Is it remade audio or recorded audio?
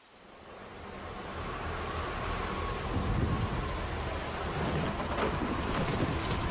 recorded